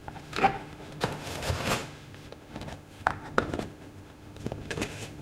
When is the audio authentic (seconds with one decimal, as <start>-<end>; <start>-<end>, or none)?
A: none